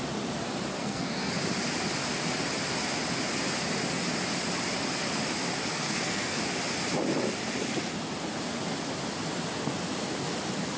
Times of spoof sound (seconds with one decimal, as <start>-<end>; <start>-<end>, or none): 0.8-1.3; 5.7-6.4